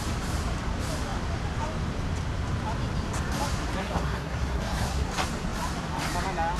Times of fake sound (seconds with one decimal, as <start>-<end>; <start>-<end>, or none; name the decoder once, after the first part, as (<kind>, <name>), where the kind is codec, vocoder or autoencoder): 3.8-5.1 (codec, SNAC)